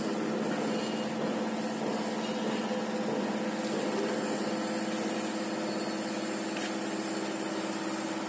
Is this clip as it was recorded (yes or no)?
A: yes